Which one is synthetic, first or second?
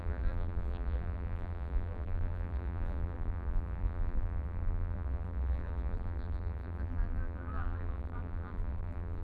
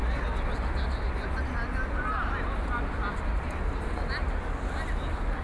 first